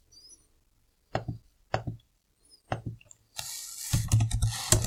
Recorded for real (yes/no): yes